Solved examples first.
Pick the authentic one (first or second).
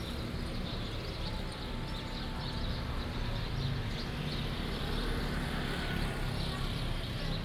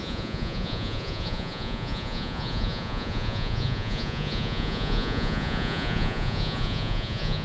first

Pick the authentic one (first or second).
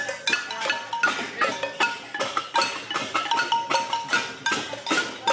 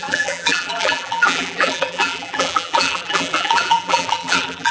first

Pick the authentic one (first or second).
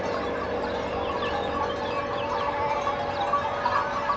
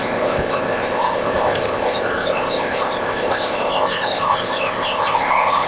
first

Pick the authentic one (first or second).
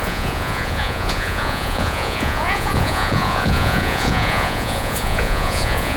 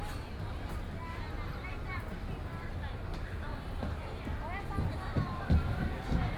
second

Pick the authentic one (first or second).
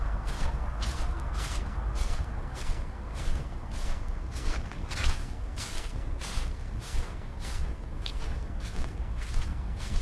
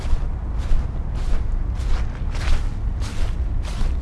second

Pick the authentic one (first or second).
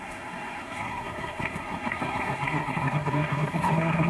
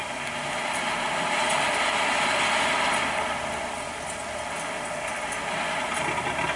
second